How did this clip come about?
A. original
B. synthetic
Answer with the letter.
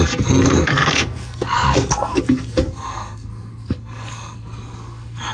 B